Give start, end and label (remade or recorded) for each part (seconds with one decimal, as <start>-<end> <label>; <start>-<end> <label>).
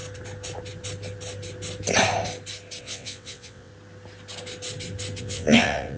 0.0-2.8 recorded; 2.8-3.7 remade; 3.7-5.2 recorded; 5.2-6.0 remade